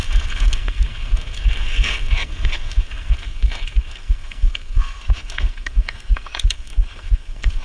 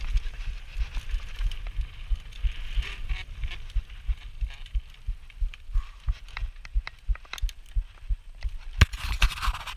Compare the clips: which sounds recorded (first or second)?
second